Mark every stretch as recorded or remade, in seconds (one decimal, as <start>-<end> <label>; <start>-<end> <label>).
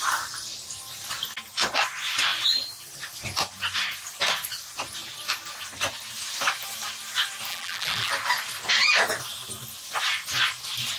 0.0-7.5 recorded; 7.5-8.1 remade; 8.1-11.0 recorded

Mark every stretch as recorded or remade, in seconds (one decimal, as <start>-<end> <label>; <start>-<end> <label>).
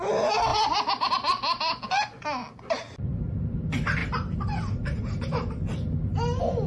0.0-4.0 recorded; 4.0-4.7 remade; 4.7-6.7 recorded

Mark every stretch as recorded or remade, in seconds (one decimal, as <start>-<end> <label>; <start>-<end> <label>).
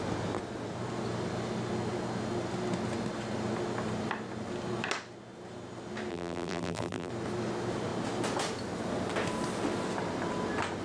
0.0-6.1 recorded; 6.1-7.1 remade; 7.1-10.8 recorded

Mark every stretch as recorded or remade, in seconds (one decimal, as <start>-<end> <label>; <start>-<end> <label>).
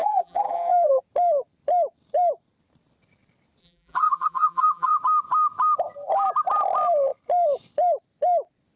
0.0-1.0 remade; 1.0-3.6 recorded; 3.6-5.0 remade; 5.0-8.8 recorded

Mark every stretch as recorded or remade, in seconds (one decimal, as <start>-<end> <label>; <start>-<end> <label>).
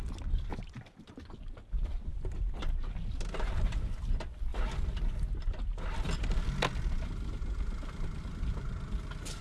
0.0-0.5 recorded; 0.5-1.1 remade; 1.1-9.4 recorded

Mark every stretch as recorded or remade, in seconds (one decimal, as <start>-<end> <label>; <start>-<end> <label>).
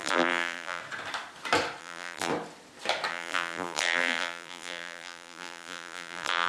0.0-0.8 remade; 0.8-1.8 recorded; 1.8-2.3 remade; 2.3-3.1 recorded; 3.1-6.5 remade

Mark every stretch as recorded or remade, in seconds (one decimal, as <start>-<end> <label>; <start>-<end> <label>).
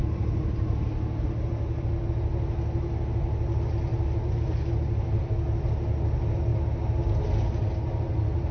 0.0-3.9 recorded; 3.9-4.7 remade; 4.7-8.5 recorded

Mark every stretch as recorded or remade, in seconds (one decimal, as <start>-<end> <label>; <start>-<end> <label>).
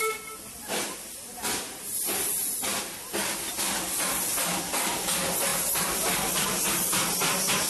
0.0-7.7 recorded